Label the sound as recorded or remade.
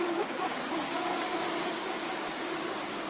remade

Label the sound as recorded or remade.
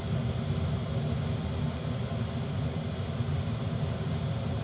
recorded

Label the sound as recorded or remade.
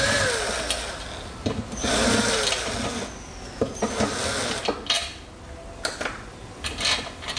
recorded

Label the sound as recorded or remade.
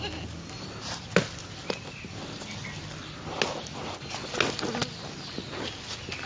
recorded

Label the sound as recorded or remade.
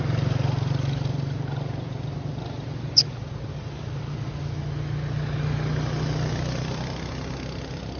recorded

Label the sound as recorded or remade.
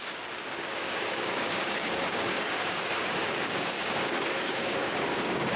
remade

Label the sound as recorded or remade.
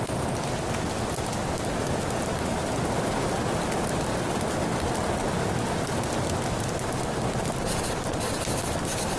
recorded